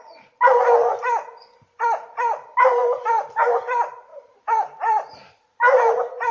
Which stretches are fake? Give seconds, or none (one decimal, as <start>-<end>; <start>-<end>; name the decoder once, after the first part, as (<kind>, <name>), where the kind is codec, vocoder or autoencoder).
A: 4.1-6.3 (vocoder, BigVGAN v2)

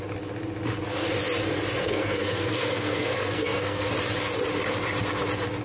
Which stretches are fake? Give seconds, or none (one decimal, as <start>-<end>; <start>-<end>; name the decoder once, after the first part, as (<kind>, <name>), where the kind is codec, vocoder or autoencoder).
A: 1.8-3.9 (codec, SNAC)

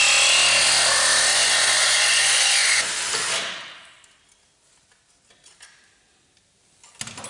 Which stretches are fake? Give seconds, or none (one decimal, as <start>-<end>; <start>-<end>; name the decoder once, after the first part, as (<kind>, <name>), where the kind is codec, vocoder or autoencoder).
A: 1.3-2.9 (vocoder, Vocos)

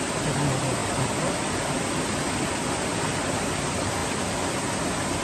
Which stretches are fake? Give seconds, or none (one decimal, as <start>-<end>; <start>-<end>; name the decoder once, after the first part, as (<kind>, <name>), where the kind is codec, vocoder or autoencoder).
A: none

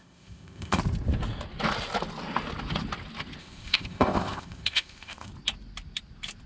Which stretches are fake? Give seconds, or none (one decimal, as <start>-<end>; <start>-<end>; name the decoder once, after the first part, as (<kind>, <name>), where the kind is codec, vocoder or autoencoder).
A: 0.0-0.8 (codec, ZipCodec); 3.4-5.3